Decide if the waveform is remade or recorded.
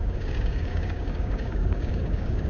remade